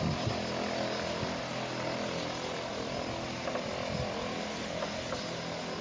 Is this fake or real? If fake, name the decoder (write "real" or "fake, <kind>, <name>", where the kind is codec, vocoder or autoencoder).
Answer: real